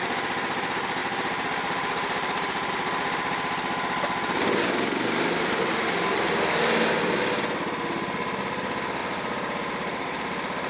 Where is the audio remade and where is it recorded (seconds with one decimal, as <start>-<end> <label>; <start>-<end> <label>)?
0.0-1.0 recorded; 1.0-2.7 remade; 2.7-9.0 recorded; 9.0-10.7 remade